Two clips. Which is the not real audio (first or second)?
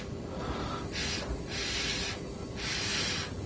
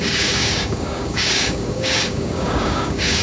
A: second